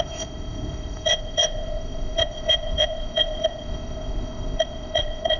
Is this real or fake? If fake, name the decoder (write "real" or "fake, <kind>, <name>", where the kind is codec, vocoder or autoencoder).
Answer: fake, codec, ZipCodec